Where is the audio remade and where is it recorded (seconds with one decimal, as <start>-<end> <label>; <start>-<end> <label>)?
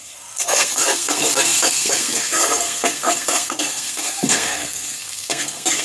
0.0-5.8 remade